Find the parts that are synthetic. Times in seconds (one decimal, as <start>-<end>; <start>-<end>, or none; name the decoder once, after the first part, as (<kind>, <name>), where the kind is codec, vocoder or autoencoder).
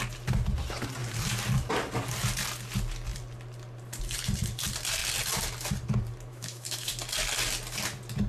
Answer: 6.3-6.9 (autoencoder, DAC-VAE)